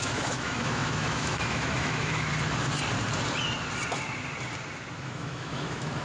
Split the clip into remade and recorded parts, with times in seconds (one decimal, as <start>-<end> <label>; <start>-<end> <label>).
0.0-2.3 remade; 2.3-5.0 recorded; 5.0-6.0 remade